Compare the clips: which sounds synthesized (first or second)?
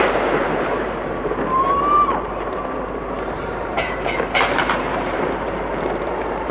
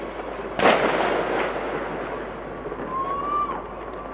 first